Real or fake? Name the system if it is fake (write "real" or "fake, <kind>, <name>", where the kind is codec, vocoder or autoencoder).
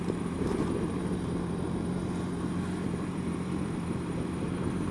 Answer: fake, vocoder, BigVGAN v2